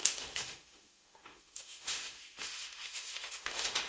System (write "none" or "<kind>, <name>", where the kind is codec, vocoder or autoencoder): autoencoder, DAC-VAE